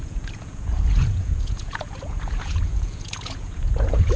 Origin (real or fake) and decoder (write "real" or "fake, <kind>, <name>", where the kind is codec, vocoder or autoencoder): fake, vocoder, Vocos